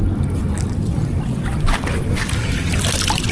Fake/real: real